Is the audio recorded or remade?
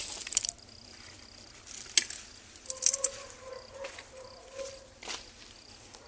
recorded